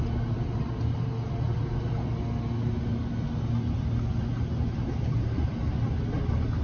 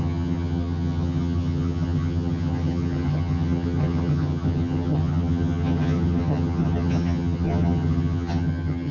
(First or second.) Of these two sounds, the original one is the first